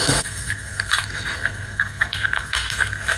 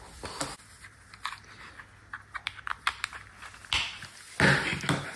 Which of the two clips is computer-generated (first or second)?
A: first